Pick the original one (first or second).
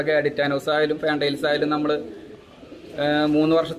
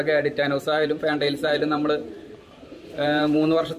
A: first